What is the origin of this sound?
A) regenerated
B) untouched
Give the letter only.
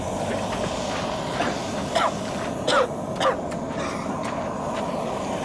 B